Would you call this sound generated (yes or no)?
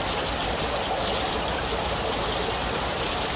no